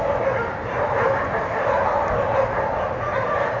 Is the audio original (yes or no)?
yes